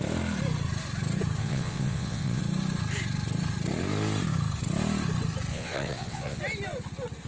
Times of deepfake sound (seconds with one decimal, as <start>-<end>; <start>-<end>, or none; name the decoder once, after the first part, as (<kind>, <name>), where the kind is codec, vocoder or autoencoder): 1.4-2.4 (vocoder, WaveNeXt); 5.5-6.4